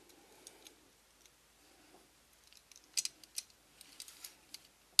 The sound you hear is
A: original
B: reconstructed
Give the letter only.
A